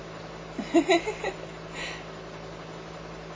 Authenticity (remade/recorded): recorded